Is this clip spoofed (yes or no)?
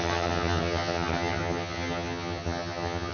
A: yes